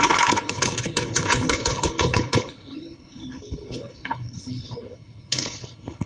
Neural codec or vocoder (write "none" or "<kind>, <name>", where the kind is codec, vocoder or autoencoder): codec, HILCodec